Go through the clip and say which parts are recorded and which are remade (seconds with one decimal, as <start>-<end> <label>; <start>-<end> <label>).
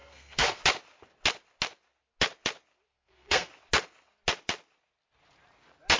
0.0-0.6 remade; 0.6-2.9 recorded; 2.9-3.5 remade; 3.5-6.0 recorded